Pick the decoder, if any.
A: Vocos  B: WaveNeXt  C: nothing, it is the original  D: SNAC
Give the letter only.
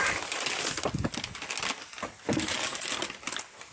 C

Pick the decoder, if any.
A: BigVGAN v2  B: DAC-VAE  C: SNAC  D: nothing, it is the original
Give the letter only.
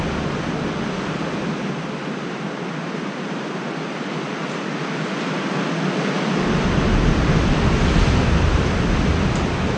D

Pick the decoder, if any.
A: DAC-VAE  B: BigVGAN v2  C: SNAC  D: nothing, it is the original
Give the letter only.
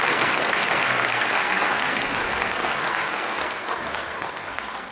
C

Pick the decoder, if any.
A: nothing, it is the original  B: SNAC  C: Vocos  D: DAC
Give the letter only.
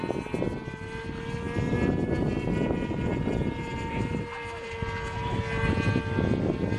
A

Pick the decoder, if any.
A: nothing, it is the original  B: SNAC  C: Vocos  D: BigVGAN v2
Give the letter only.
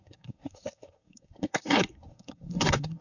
B